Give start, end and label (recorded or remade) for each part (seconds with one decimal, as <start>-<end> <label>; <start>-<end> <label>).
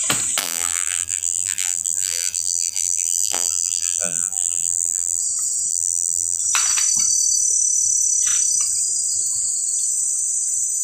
0.0-0.4 recorded; 0.4-5.2 remade; 5.2-5.7 recorded; 5.7-6.4 remade; 6.4-10.8 recorded